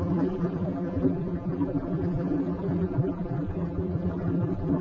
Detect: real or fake fake